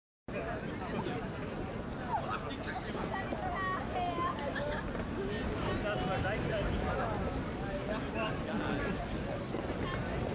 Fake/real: real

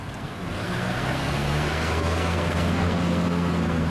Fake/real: fake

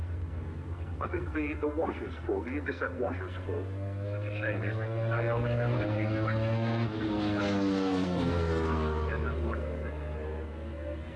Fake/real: fake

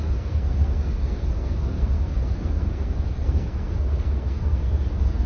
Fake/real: fake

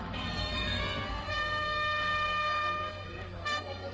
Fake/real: fake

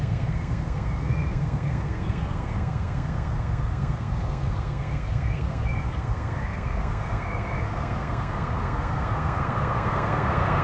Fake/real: fake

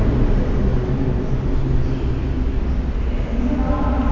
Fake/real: real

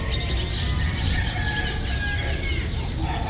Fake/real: real